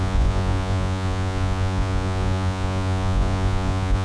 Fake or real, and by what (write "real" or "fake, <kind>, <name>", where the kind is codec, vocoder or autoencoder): fake, vocoder, Vocos